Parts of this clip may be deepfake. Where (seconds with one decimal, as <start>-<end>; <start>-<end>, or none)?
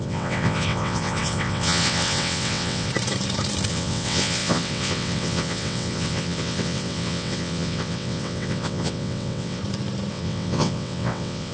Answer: 0.0-2.9; 3.7-9.6; 10.1-11.5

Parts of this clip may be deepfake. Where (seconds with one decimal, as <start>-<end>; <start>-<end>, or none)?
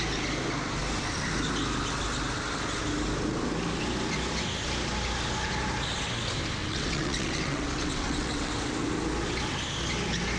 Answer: 6.6-8.5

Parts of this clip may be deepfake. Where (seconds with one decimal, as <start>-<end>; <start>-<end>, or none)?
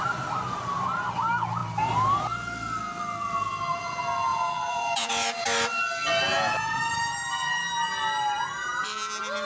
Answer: 4.3-5.1; 6.3-6.8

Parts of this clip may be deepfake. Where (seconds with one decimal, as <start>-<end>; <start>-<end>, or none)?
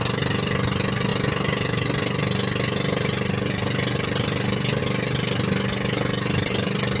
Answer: none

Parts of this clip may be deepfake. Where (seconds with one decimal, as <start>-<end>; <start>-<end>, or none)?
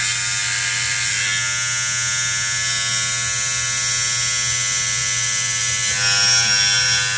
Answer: none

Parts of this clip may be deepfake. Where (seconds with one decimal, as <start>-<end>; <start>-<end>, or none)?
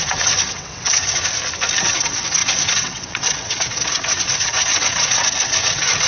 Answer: 0.0-1.2; 1.8-6.1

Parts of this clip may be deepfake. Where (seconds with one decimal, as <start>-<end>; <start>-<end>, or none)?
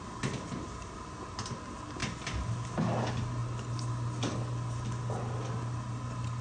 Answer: none